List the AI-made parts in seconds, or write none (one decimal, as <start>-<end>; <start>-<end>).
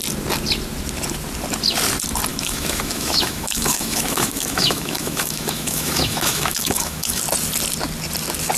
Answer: 2.3-7.2